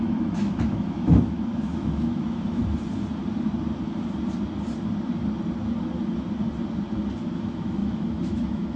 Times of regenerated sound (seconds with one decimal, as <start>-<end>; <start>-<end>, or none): 0.0-2.6; 7.2-8.8